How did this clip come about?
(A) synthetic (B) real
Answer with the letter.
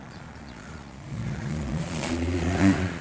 A